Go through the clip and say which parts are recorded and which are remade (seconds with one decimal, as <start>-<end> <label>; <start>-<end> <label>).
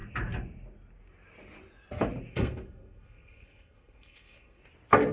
0.0-2.3 recorded; 2.3-4.6 remade; 4.6-5.1 recorded